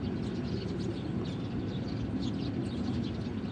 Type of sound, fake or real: real